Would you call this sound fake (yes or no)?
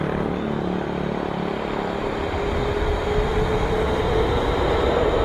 no